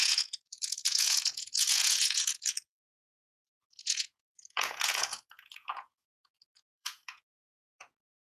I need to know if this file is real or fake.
fake